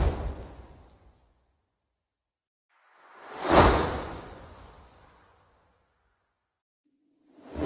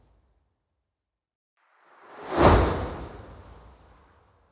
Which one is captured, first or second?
second